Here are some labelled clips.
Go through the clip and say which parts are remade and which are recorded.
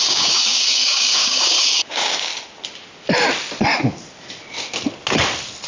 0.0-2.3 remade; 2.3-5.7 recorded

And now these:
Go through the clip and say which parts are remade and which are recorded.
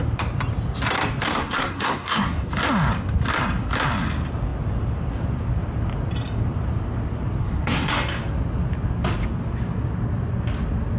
0.0-1.3 recorded; 1.3-2.5 remade; 2.5-7.4 recorded; 7.4-7.9 remade; 7.9-11.0 recorded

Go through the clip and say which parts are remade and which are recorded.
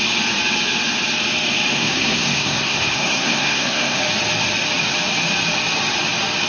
0.0-1.7 recorded; 1.7-4.0 remade; 4.0-6.5 recorded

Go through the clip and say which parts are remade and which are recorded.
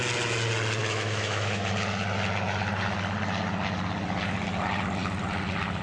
0.0-0.8 recorded; 0.8-1.7 remade; 1.7-5.8 recorded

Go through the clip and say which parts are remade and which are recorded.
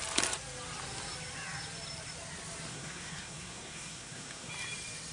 0.0-2.7 recorded; 2.7-4.5 remade; 4.5-5.1 recorded